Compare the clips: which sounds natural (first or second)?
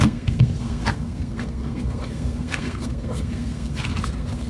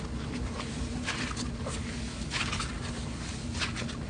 second